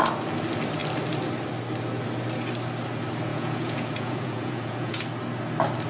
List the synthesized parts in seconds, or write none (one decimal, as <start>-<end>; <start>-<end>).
3.3-5.0